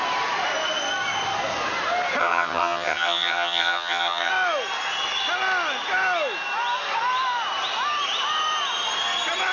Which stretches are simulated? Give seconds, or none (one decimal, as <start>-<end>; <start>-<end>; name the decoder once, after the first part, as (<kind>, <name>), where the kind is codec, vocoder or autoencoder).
2.2-4.3 (vocoder, HiFi-GAN)